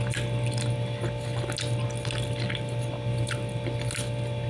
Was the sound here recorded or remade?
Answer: recorded